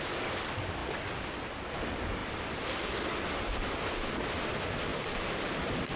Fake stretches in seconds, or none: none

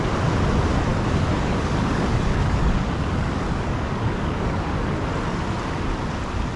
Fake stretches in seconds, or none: 0.9-4.9 (codec, DAC)

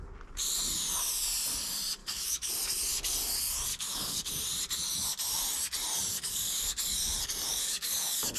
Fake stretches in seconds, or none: 2.0-2.5 (codec, DAC); 3.7-4.3; 6.1-7.0; 7.5-8.4

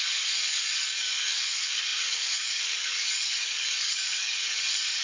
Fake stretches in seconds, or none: 0.0-5.0 (codec, DAC)